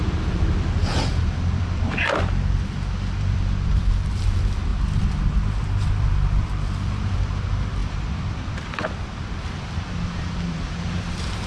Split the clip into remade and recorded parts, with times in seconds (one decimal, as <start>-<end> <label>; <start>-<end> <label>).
0.0-0.8 recorded; 0.8-4.7 remade; 4.7-5.6 recorded; 5.6-11.5 remade